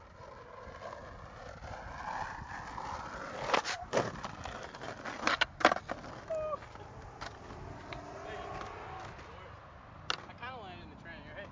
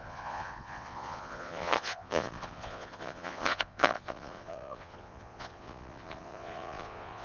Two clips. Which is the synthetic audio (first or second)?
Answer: second